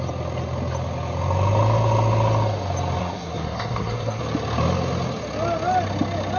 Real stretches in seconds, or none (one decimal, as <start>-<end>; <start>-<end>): 0.0-3.0; 4.2-6.4